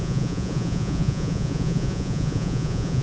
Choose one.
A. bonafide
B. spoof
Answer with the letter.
B